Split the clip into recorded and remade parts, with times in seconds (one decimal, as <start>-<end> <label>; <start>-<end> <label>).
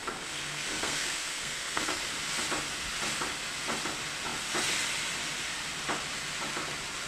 0.0-2.0 remade; 2.0-7.1 recorded